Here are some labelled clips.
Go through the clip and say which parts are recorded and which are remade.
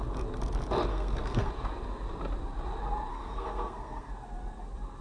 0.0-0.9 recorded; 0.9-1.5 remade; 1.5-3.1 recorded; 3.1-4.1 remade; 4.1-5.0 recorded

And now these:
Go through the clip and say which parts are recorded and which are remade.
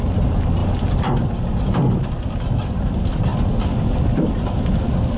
0.0-5.2 recorded